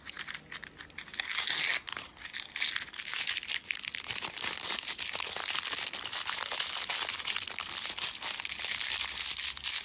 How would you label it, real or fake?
real